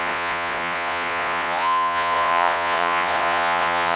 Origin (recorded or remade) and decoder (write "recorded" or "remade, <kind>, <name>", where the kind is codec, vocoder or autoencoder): remade, vocoder, Vocos